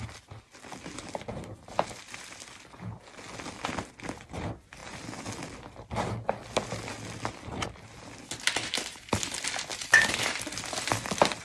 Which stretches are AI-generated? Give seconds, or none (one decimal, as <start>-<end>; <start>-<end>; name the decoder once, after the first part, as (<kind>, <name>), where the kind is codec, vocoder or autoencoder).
none